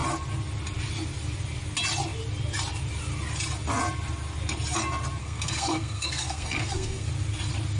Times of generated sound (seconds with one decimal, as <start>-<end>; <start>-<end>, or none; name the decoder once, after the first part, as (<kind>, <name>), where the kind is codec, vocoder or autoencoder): 5.2-7.1 (codec, SNAC)